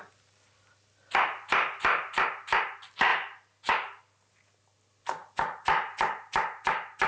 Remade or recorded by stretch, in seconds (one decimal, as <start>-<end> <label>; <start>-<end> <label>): 0.0-7.1 recorded